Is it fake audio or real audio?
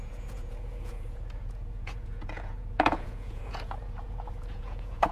fake